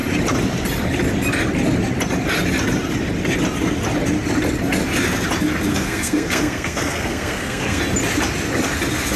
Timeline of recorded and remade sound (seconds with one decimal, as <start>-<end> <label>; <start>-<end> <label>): 0.0-5.7 recorded; 5.7-7.8 remade; 7.8-9.2 recorded